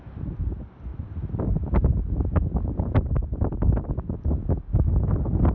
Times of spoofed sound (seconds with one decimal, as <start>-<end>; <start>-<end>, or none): none